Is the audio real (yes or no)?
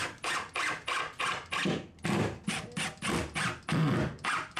yes